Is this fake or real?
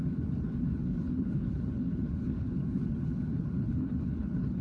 fake